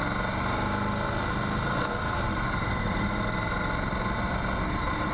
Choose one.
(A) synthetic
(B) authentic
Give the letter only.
B